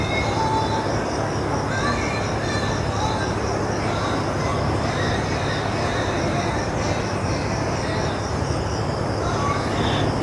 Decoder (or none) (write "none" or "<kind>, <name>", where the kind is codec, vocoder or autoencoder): none